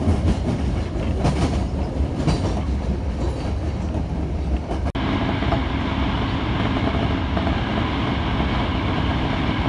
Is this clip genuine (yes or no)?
yes